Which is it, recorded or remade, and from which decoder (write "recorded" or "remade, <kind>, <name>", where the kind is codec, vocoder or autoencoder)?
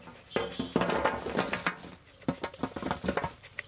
recorded